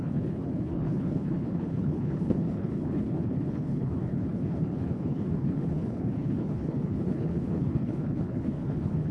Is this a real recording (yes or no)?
no